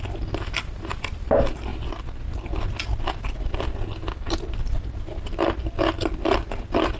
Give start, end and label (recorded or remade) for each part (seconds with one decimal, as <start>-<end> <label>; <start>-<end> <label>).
0.0-7.0 recorded